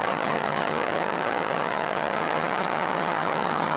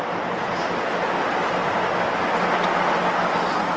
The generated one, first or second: first